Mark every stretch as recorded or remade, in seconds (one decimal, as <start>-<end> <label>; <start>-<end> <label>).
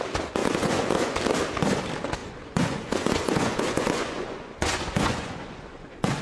0.0-0.4 recorded; 0.4-1.2 remade; 1.2-2.2 recorded; 2.2-6.2 remade